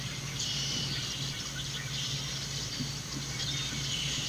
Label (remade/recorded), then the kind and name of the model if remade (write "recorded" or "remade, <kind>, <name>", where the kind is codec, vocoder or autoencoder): recorded